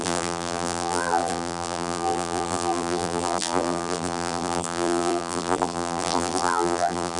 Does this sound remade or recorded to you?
remade